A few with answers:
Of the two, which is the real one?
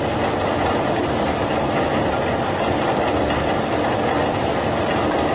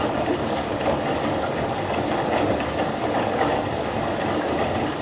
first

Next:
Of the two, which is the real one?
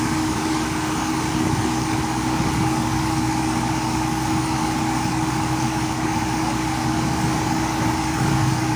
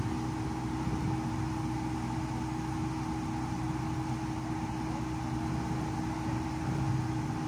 second